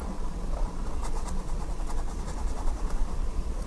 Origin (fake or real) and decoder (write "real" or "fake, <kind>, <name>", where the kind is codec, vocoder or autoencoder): fake, vocoder, Vocos